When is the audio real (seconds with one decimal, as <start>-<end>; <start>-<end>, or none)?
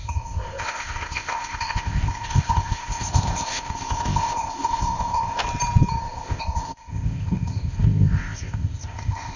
5.4-6.0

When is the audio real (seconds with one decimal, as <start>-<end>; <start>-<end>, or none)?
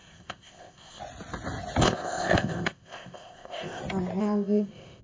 1.0-1.8; 3.8-4.2